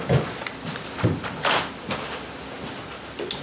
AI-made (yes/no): no